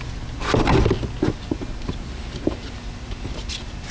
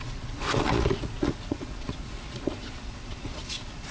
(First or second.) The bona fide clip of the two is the first